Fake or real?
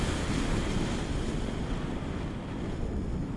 real